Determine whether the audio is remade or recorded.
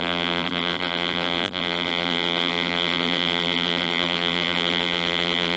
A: remade